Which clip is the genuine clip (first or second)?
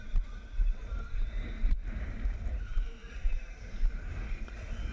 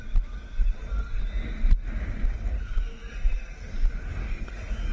second